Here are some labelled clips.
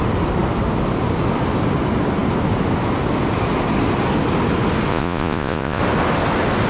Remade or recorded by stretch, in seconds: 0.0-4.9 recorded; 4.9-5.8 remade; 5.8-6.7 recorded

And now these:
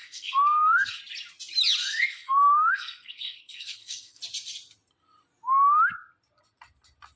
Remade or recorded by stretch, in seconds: 0.0-1.0 remade; 1.0-1.8 recorded; 1.8-4.2 remade; 4.2-7.2 recorded